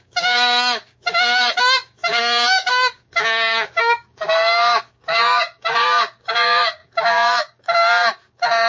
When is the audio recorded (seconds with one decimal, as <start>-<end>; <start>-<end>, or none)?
none